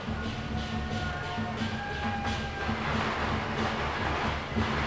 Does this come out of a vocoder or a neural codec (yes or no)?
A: no